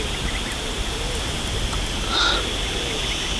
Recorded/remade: recorded